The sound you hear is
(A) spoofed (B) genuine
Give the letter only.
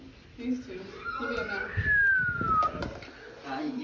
B